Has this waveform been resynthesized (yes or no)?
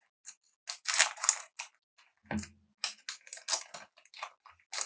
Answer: no